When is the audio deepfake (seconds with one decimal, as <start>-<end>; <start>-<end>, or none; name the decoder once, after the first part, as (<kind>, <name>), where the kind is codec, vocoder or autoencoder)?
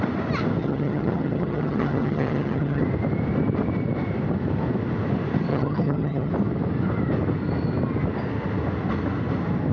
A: 0.6-2.8 (vocoder, HiFi-GAN); 5.5-6.3